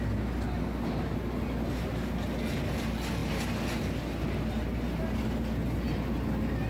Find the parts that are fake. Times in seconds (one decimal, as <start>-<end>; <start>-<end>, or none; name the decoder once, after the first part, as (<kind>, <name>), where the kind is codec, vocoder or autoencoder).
none